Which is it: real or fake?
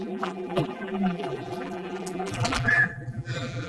fake